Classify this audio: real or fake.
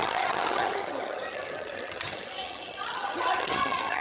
fake